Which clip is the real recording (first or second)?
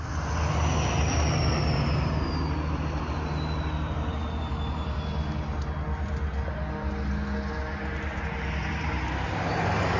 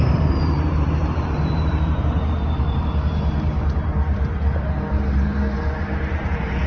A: first